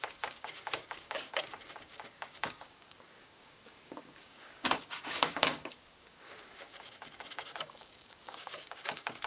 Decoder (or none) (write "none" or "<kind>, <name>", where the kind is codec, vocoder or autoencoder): codec, DAC